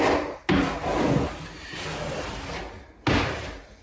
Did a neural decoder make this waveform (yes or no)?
no